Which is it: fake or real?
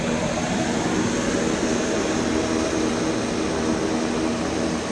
real